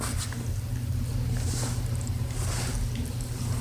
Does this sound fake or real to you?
real